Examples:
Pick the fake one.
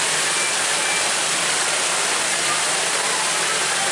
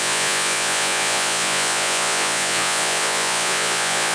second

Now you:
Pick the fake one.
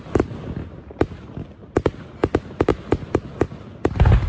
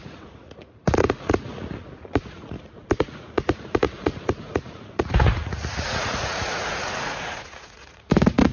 second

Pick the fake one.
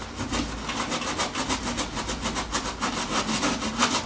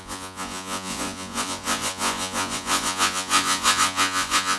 second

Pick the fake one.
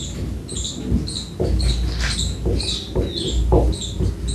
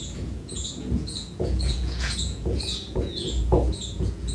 second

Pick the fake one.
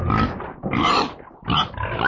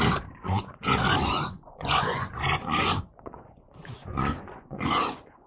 second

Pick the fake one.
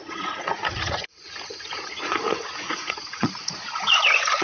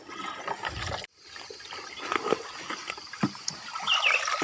first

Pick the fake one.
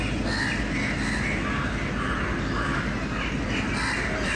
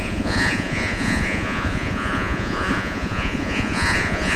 second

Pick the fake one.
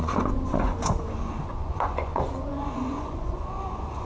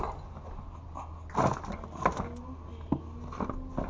first